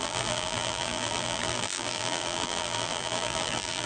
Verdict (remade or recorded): remade